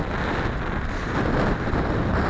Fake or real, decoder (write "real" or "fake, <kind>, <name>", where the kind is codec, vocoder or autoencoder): real